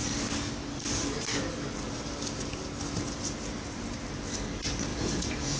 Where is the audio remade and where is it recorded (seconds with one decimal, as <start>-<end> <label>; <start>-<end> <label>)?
0.0-4.9 recorded; 4.9-5.6 remade